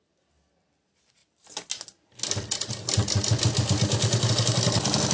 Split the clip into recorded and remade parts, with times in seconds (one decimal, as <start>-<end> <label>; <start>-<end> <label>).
0.0-5.1 recorded